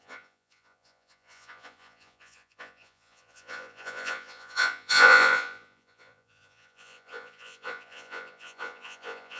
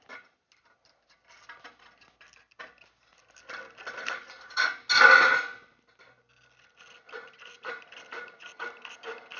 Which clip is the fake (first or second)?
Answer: first